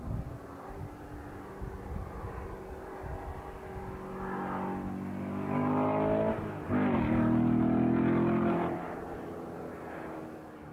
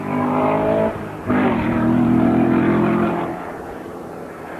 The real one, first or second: first